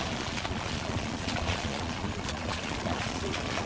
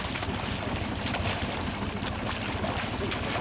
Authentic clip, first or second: second